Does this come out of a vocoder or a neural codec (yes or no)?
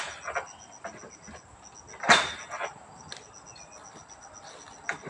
no